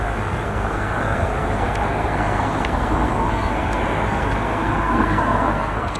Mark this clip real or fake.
fake